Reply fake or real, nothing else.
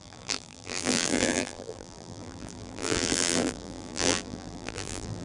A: fake